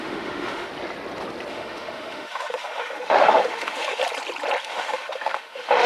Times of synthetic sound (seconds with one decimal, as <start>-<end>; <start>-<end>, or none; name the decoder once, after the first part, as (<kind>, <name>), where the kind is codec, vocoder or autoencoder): 0.0-0.7 (autoencoder, DAC-VAE); 1.5-4.0; 4.6-5.9